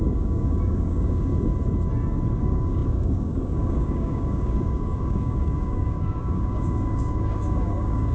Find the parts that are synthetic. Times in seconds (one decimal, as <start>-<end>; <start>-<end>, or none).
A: 0.0-1.3; 2.4-8.1